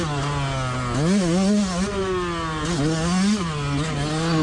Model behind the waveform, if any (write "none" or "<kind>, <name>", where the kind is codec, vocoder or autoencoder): none